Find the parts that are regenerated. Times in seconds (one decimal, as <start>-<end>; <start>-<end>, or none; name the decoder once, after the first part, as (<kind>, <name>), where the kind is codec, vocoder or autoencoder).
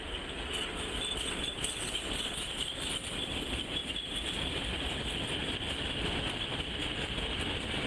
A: 3.8-4.7 (vocoder, BigVGAN v2); 5.4-7.9